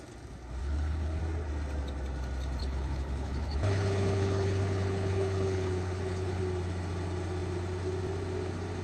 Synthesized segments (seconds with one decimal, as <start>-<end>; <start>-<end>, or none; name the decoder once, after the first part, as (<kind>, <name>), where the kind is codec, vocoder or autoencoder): 0.6-1.2 (codec, HILCodec); 2.6-6.4

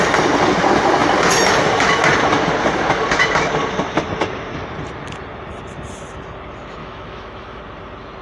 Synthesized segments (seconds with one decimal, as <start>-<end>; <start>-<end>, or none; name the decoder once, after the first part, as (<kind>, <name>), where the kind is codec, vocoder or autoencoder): 6.8-7.6 (autoencoder, DAC-VAE)